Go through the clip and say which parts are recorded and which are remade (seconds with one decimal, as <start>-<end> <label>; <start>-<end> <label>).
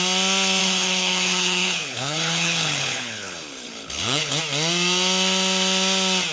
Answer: 0.0-0.6 recorded; 0.6-4.4 remade; 4.4-6.3 recorded